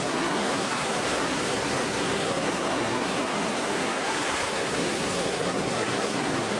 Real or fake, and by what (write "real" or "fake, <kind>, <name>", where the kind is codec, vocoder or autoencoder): fake, codec, SNAC